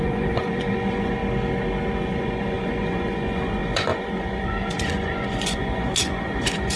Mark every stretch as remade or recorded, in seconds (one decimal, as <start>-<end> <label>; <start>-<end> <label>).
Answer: 0.0-1.2 remade; 1.2-2.2 recorded; 2.2-6.8 remade